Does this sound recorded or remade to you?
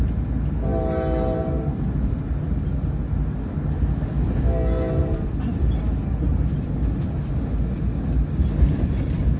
recorded